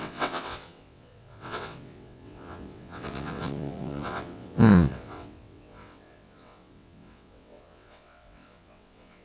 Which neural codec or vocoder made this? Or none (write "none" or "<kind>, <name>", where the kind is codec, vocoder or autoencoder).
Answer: vocoder, WaveNeXt